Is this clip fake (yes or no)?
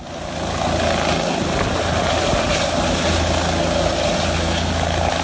no